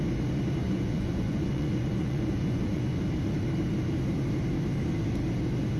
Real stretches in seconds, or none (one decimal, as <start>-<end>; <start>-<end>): 0.0-0.6; 3.0-5.8